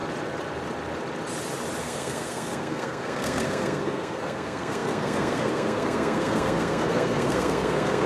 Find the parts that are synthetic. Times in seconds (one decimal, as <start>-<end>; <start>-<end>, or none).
1.8-8.1